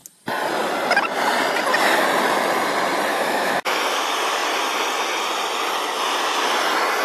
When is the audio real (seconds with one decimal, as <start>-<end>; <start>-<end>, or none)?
0.0-3.1; 3.8-7.0